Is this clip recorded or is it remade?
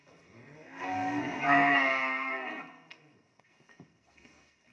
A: remade